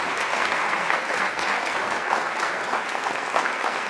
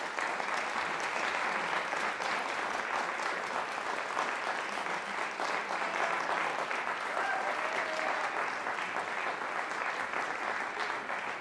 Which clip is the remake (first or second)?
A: first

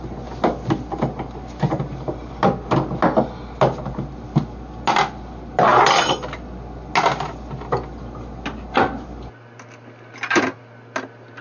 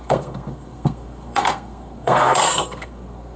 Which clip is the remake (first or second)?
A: second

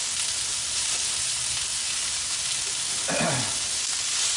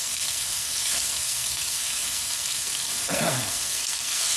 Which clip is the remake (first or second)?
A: second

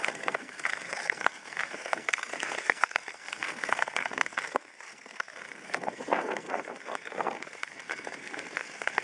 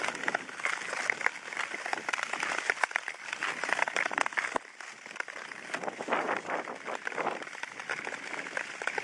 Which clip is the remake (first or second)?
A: first